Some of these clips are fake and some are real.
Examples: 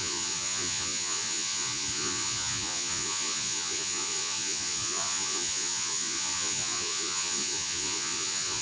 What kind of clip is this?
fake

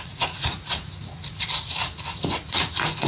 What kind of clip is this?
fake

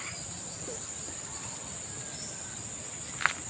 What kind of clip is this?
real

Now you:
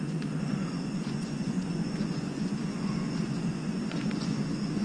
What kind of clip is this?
fake